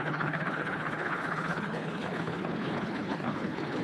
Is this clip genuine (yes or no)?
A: no